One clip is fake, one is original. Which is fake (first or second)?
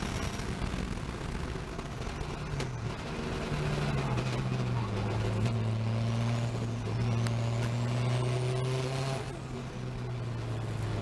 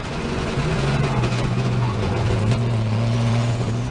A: second